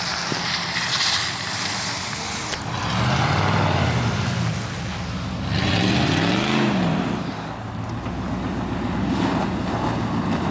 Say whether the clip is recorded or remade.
recorded